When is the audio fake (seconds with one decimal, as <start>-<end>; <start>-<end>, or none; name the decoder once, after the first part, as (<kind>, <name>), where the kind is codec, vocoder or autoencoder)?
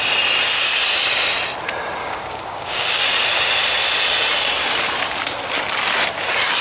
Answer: 2.0-3.0 (codec, DAC)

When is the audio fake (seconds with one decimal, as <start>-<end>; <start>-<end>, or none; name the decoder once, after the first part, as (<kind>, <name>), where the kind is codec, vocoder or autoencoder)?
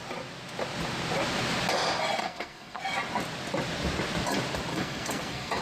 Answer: 2.2-2.8 (codec, SNAC); 4.7-5.6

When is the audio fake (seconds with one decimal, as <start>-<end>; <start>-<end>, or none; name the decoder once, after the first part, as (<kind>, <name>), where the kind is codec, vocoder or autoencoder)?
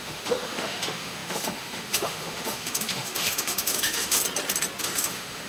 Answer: 0.0-4.2 (autoencoder, DAC-VAE); 4.8-5.5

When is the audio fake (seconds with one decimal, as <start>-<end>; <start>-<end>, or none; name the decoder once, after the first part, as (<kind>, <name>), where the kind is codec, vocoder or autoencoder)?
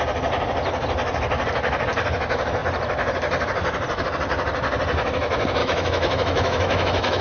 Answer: 5.6-7.2 (autoencoder, DAC-VAE)